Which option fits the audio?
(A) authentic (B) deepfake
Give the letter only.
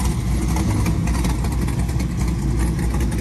A